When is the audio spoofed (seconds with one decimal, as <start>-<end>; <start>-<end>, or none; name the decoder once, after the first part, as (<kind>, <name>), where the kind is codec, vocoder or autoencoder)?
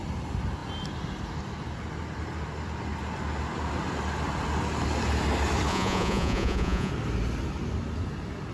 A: 5.7-6.9 (vocoder, Vocos)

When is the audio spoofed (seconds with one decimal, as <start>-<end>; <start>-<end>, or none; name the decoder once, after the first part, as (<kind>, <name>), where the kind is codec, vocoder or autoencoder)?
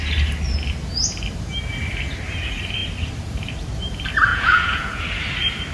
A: 4.3-5.0 (vocoder, Vocos)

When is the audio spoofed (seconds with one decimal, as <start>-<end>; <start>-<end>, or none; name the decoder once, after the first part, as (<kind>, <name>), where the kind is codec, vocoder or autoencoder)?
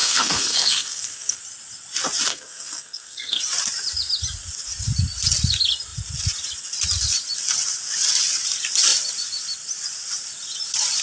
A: 0.0-1.4 (codec, SNAC); 2.3-3.4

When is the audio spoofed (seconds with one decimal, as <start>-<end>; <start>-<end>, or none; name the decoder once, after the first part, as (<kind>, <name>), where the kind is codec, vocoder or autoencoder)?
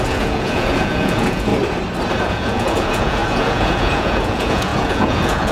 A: 0.0-1.5 (vocoder, Vocos); 2.2-5.5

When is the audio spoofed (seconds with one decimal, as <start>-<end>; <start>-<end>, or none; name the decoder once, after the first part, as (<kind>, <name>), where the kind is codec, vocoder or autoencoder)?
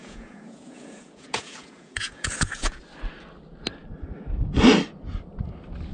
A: 0.0-2.8 (vocoder, Vocos)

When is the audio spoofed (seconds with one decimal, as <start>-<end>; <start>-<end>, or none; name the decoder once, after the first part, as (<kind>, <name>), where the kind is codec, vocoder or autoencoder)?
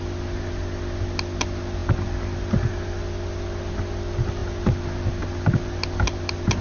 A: none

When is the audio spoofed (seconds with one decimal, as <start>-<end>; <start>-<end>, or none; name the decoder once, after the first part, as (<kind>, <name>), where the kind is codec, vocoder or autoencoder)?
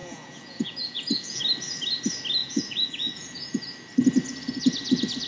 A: 0.0-1.4 (vocoder, Vocos); 2.4-3.5